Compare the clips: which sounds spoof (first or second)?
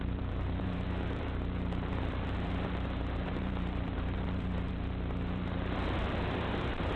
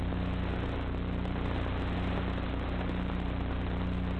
first